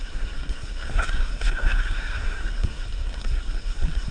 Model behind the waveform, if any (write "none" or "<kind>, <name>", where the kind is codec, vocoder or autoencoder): codec, SNAC